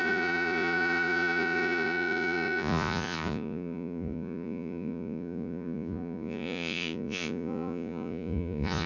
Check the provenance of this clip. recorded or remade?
remade